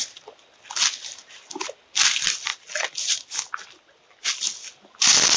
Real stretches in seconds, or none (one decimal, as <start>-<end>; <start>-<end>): 0.0-5.4